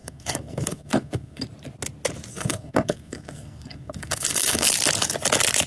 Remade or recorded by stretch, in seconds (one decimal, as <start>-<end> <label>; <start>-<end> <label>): 0.0-1.4 remade; 1.4-2.3 recorded; 2.3-4.7 remade; 4.7-5.7 recorded